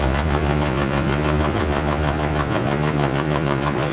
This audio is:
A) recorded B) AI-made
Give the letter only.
B